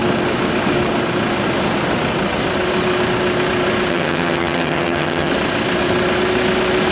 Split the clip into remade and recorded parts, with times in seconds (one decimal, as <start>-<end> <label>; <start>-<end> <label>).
0.0-3.9 recorded; 3.9-5.3 remade; 5.3-6.9 recorded